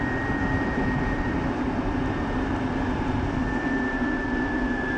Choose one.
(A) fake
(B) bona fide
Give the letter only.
A